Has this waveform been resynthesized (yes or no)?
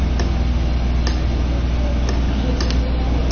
no